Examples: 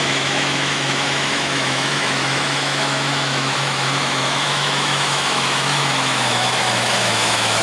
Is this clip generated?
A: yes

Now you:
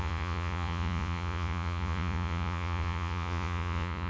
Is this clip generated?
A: yes